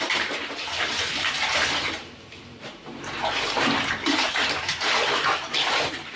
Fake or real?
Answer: fake